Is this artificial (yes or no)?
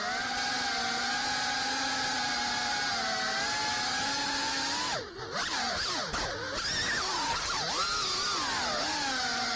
no